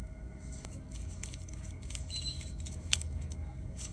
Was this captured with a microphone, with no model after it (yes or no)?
no